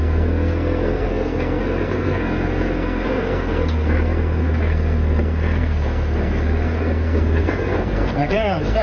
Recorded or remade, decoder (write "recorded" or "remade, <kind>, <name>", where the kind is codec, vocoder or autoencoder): remade, codec, SNAC